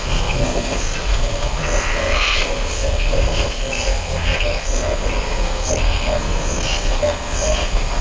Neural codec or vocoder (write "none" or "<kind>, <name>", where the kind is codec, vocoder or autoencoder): codec, SNAC